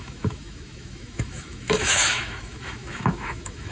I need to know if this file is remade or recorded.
remade